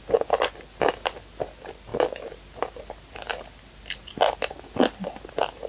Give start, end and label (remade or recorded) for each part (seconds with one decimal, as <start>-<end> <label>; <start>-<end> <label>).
0.0-5.7 recorded